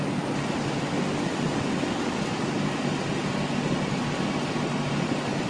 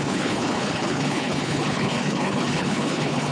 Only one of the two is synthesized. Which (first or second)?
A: second